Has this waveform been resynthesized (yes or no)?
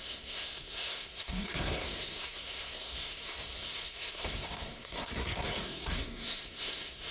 yes